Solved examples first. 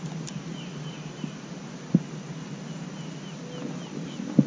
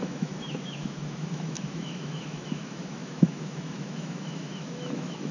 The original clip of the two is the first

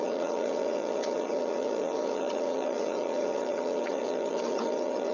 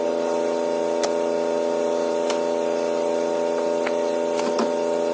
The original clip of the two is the second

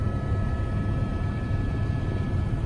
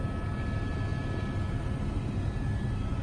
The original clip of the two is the second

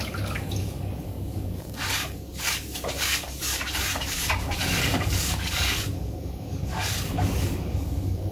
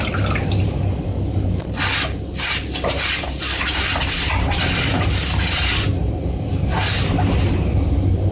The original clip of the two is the second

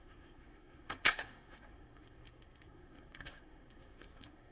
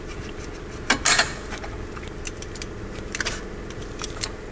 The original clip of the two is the second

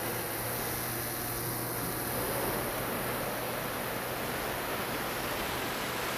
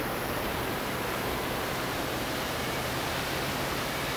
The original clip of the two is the first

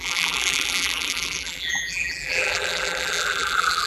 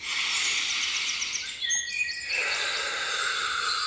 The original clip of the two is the second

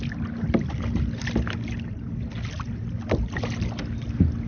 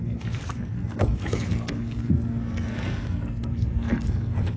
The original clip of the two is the first